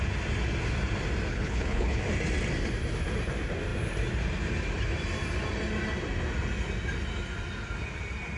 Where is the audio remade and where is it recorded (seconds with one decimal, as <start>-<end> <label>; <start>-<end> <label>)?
0.0-1.3 recorded; 1.3-2.0 remade; 2.0-8.4 recorded